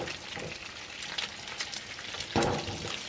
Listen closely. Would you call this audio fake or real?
real